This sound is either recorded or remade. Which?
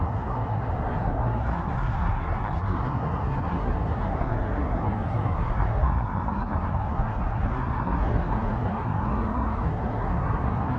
remade